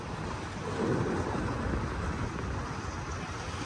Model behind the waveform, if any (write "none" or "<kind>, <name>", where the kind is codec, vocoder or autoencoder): none